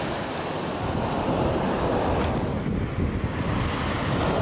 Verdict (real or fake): real